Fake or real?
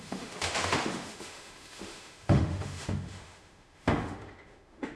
fake